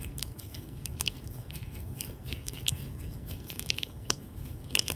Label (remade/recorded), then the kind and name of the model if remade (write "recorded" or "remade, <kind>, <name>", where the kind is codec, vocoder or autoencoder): remade, codec, SNAC